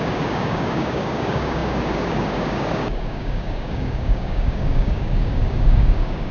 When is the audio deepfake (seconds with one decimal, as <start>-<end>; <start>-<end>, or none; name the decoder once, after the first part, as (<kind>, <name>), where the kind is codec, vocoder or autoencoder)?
0.0-6.3 (codec, DAC)